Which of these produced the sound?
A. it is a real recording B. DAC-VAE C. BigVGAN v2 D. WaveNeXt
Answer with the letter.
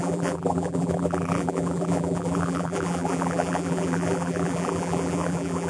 C